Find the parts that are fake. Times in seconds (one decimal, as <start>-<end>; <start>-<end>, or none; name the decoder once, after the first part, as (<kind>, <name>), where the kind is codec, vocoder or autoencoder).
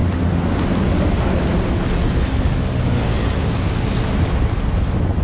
none